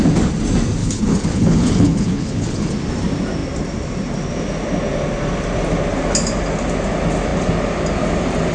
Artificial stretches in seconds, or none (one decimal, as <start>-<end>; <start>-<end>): 0.8-2.7